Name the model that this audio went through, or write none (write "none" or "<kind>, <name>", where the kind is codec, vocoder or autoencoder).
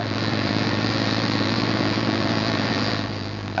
vocoder, BigVGAN v2